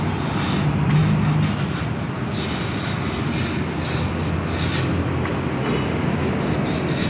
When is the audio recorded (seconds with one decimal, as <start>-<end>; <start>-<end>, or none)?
0.0-7.1